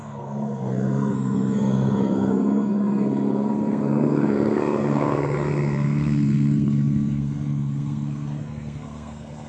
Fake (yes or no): yes